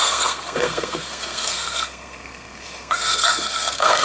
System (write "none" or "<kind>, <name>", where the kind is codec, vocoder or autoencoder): codec, SNAC